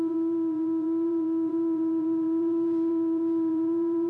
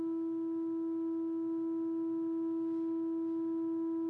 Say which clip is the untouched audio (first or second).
second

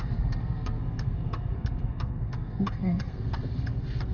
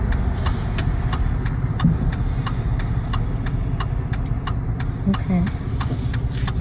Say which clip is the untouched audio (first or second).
second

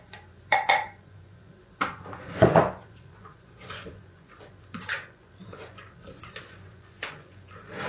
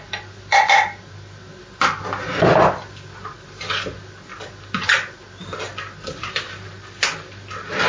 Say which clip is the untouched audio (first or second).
second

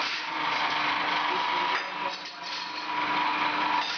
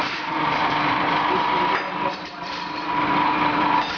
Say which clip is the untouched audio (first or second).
first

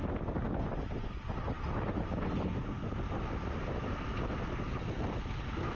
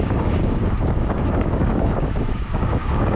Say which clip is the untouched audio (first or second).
first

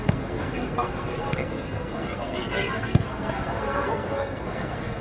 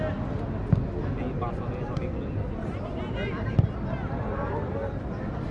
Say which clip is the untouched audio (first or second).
second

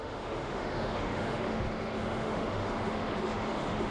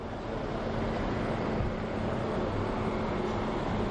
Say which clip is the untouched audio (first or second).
second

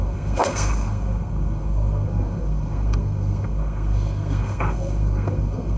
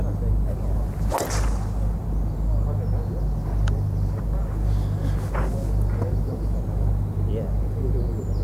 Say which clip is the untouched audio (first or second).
second